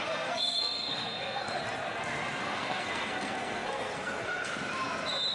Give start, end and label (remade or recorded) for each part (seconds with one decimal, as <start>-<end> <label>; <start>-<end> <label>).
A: 0.0-1.6 remade; 1.6-2.4 recorded; 2.4-4.5 remade; 4.5-5.3 recorded

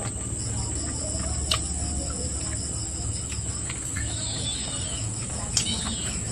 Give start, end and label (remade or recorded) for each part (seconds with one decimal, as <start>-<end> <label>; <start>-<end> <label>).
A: 0.0-2.8 recorded; 2.8-6.3 remade

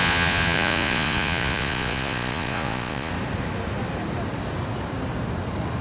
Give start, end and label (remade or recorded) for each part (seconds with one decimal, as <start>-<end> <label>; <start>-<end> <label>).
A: 0.0-3.1 remade; 3.1-5.8 recorded

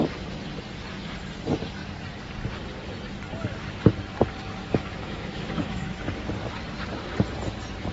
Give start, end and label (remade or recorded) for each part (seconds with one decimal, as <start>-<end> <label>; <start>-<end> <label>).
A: 0.0-4.6 recorded; 4.6-6.0 remade; 6.0-7.9 recorded